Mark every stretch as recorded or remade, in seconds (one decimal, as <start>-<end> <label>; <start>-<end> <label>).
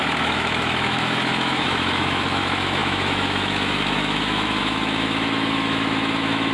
0.0-6.5 remade